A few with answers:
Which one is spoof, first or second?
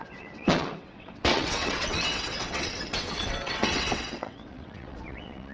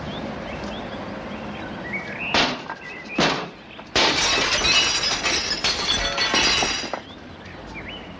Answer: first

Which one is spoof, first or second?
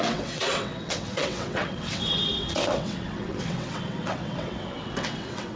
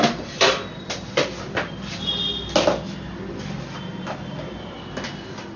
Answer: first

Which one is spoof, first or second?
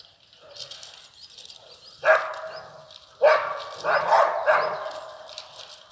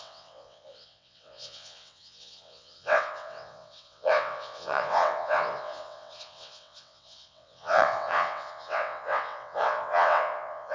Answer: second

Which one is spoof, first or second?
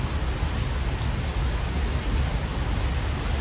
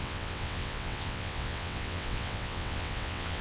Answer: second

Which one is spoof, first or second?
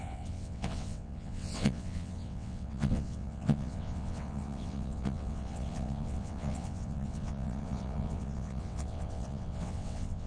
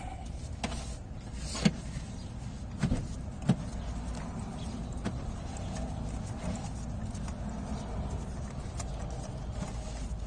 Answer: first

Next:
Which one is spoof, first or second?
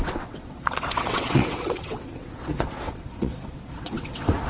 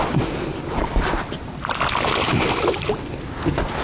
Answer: first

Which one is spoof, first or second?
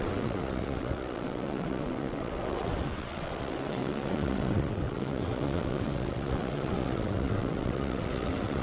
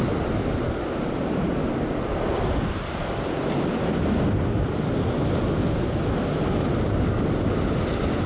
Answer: first